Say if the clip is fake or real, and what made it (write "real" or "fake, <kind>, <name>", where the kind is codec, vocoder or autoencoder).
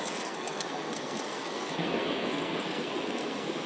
fake, codec, SNAC